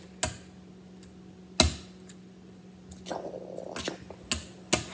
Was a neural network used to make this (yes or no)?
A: no